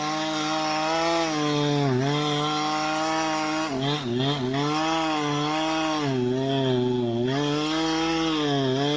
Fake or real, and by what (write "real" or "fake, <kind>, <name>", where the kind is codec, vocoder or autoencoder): real